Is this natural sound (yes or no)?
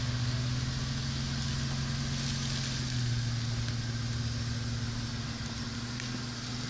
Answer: yes